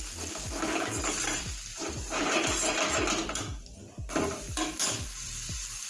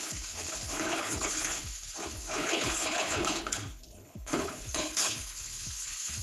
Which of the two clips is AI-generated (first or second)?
second